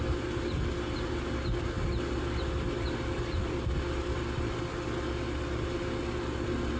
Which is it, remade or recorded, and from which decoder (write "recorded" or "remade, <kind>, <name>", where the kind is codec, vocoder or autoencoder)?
recorded